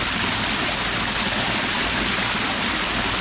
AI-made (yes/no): no